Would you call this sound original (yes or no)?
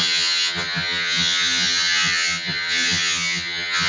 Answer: no